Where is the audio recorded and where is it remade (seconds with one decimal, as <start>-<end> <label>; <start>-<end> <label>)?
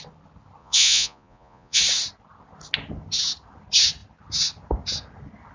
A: 0.0-0.6 recorded; 0.6-1.8 remade; 1.8-5.5 recorded